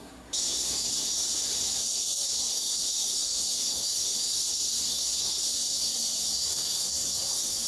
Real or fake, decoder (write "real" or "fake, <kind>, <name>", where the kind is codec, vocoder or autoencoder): fake, codec, SNAC